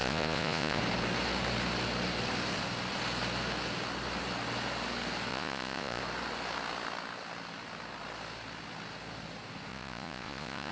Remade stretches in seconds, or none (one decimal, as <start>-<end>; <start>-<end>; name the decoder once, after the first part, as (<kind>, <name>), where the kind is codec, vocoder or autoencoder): 0.0-0.8 (vocoder, Vocos); 5.3-6.0; 9.7-10.7